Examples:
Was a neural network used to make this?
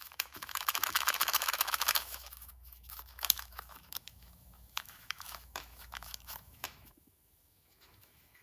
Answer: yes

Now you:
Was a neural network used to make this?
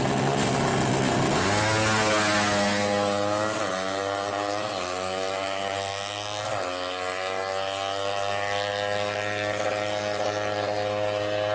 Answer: no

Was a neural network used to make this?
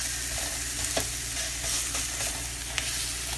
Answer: no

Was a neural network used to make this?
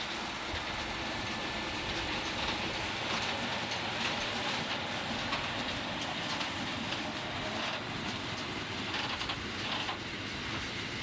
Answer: no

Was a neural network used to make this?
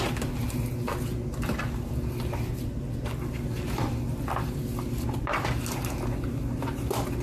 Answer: no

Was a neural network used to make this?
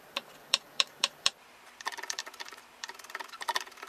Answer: yes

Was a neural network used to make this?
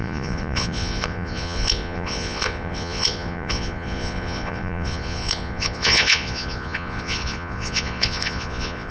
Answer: yes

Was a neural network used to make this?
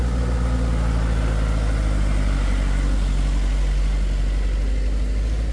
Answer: no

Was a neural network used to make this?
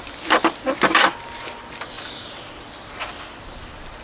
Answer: no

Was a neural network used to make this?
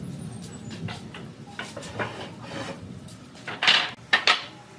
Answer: no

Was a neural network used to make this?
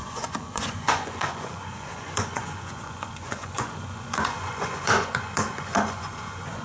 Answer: yes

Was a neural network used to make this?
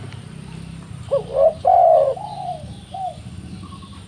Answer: yes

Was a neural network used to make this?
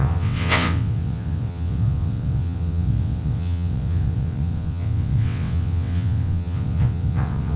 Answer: yes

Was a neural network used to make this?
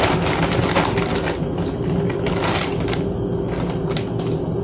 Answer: no